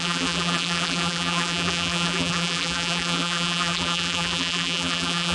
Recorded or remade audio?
remade